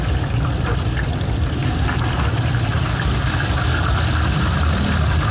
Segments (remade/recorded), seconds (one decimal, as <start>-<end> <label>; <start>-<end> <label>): 0.0-1.6 remade; 1.6-2.1 recorded; 2.1-5.3 remade